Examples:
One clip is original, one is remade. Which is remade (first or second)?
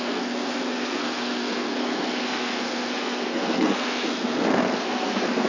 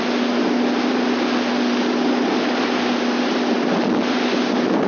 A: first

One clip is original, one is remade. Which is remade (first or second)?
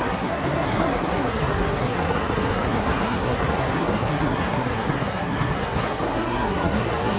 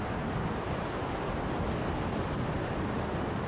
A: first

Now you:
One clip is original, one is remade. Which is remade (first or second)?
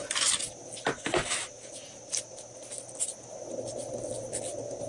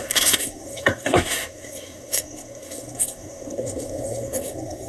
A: second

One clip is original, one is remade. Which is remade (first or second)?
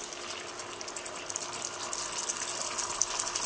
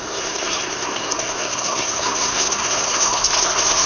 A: second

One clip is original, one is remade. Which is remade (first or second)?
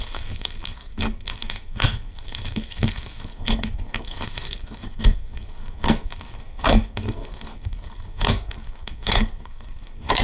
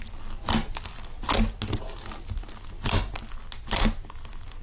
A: first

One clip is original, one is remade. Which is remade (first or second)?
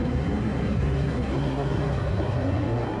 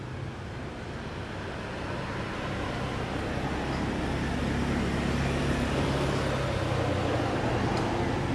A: first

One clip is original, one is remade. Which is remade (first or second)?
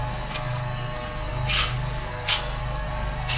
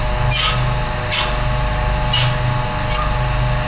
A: first